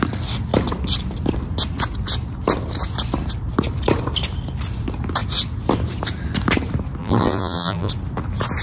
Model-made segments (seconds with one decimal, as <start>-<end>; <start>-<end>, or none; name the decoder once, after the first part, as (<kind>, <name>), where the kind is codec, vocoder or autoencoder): 7.0-7.9 (vocoder, BigVGAN v2)